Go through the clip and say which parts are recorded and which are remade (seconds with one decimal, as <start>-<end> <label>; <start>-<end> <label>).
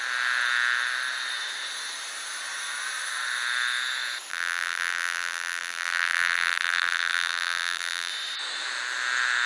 0.0-4.3 recorded; 4.3-8.1 remade; 8.1-9.5 recorded